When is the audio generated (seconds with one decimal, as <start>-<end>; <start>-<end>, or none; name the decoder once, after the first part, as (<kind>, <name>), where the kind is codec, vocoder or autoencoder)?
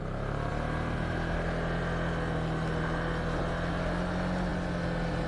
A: none